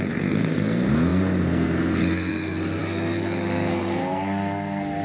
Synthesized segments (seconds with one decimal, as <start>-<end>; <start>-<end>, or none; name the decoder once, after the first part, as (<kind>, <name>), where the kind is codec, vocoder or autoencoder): 0.0-5.0 (codec, SNAC)